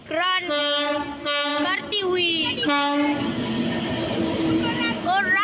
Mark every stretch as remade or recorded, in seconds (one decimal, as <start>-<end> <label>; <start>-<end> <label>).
0.0-5.4 recorded